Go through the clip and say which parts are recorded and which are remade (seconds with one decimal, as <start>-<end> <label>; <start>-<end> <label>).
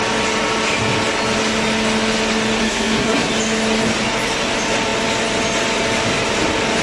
0.0-2.6 recorded; 2.6-3.3 remade; 3.3-6.8 recorded